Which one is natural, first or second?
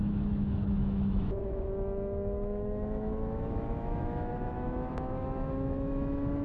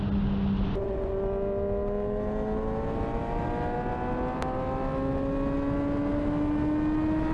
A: second